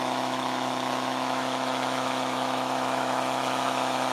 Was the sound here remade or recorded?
remade